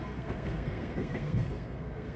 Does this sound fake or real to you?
fake